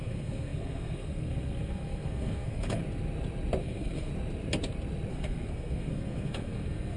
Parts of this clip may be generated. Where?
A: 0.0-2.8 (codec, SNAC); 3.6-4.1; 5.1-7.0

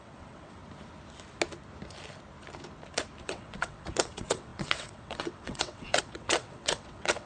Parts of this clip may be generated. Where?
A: 0.0-0.6 (vocoder, WaveNeXt); 3.2-7.3

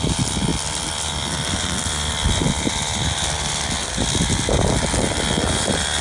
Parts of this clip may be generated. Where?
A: none

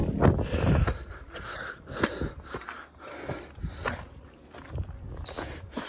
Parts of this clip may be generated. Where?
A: none

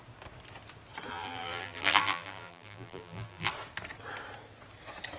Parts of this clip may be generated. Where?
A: 1.1-3.5 (vocoder, BigVGAN v2)

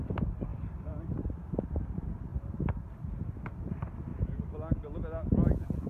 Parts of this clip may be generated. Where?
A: 0.5-1.1 (vocoder, BigVGAN v2); 2.3-3.2